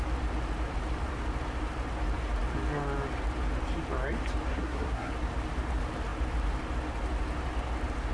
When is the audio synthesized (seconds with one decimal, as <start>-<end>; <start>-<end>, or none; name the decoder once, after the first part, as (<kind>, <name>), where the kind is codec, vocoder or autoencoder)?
4.5-5.1 (codec, SNAC)